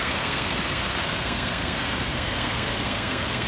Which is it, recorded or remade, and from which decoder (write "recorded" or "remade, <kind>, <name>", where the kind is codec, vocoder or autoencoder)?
remade, codec, SNAC